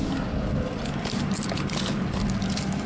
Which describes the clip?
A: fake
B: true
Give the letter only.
B